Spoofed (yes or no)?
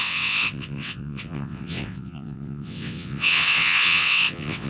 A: yes